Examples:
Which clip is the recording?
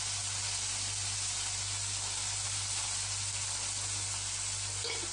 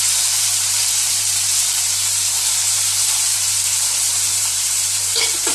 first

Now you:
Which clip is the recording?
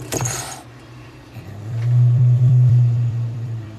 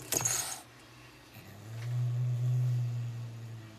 second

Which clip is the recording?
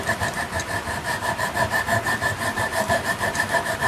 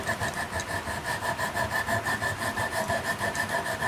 second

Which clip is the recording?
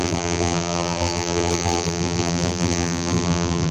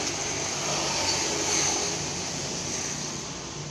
second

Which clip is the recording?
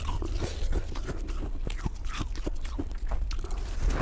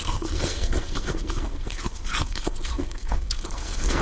first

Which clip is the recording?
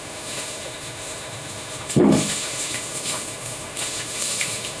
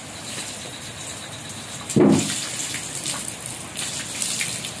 second